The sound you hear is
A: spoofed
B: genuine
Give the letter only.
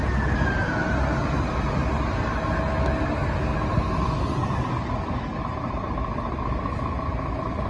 B